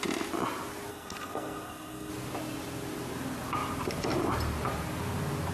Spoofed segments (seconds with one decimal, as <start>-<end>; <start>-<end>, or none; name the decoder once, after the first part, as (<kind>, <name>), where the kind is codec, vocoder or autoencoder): 0.9-2.1 (codec, SNAC)